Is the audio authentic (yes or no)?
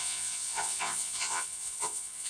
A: no